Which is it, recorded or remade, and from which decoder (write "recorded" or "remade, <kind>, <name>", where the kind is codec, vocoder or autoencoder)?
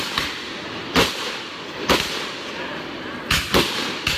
recorded